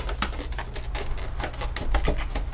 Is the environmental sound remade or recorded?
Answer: recorded